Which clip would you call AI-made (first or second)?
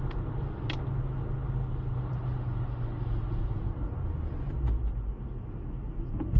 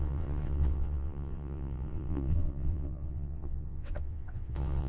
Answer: second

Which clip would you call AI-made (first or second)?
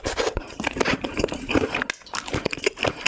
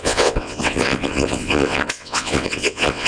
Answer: second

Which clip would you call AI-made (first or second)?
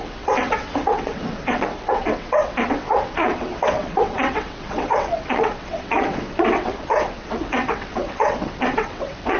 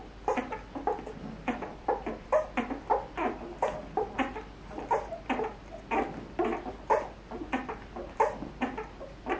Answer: first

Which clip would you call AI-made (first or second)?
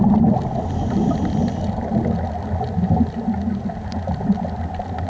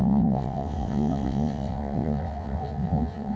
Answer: second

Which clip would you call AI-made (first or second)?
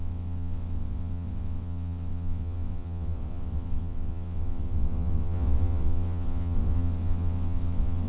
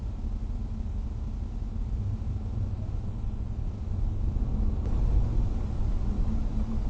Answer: first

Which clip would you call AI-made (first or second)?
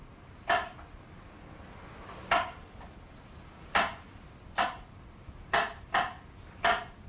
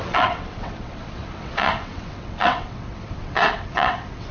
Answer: second